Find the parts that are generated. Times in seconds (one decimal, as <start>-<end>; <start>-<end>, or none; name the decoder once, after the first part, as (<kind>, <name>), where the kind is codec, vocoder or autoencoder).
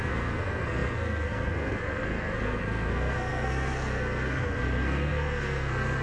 0.0-6.0 (codec, SNAC)